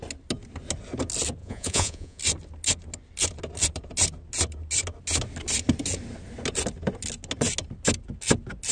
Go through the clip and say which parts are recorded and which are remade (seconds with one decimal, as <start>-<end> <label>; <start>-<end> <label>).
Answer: 0.0-1.4 recorded; 1.4-2.2 remade; 2.2-8.7 recorded